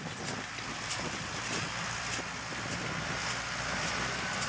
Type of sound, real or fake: real